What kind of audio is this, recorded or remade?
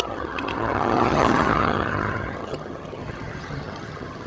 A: remade